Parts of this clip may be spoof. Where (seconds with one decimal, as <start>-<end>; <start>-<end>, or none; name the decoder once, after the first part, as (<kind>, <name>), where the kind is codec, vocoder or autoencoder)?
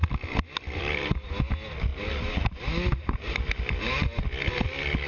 none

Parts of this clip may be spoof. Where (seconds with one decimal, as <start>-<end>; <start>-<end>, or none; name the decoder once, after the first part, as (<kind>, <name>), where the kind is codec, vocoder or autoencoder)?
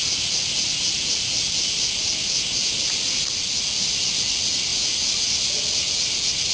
none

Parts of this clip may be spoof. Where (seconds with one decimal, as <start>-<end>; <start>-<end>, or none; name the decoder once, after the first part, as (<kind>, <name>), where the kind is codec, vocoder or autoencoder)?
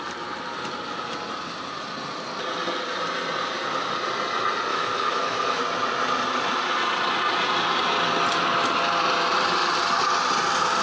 4.7-5.6 (autoencoder, DAC-VAE)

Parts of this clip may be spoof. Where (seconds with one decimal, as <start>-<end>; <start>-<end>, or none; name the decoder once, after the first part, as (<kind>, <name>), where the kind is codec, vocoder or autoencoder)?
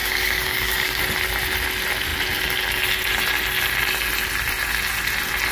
0.0-1.0 (codec, DAC)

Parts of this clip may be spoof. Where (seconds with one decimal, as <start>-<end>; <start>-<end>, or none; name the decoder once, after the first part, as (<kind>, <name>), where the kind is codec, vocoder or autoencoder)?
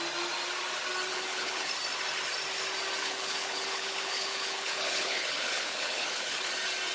1.1-1.7 (codec, HILCodec); 3.0-6.5